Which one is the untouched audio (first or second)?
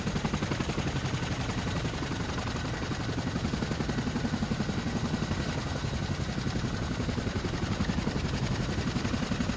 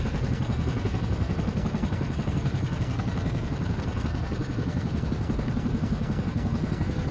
first